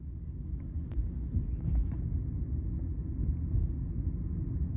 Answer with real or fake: real